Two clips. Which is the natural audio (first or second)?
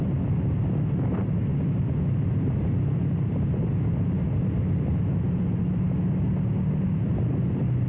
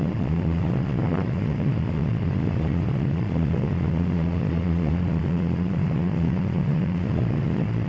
first